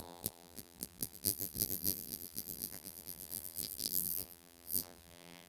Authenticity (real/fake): fake